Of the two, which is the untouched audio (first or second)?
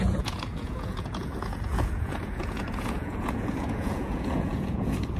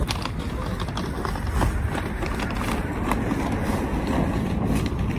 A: second